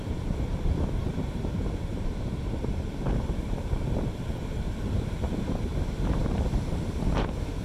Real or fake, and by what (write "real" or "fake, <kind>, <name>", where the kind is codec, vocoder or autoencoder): fake, vocoder, BigVGAN v2